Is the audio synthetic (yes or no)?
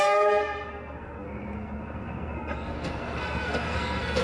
yes